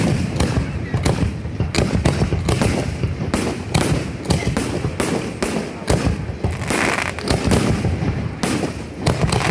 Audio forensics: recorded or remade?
recorded